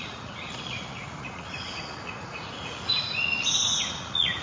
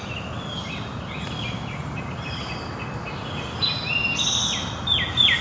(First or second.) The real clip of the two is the second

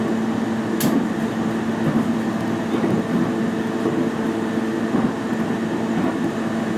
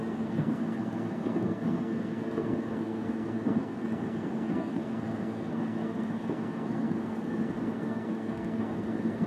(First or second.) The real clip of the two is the first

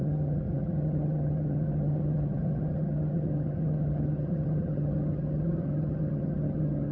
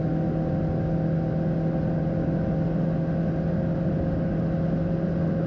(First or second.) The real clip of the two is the second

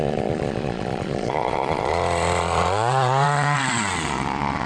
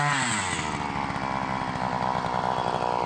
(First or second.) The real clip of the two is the second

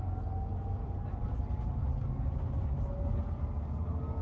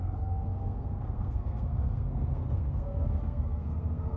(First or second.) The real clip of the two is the first